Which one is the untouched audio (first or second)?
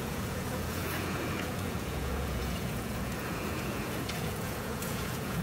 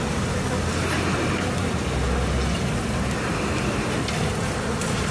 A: second